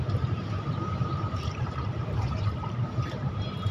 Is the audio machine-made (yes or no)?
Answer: yes